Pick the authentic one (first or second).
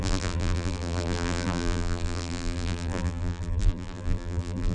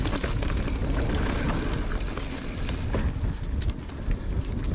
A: second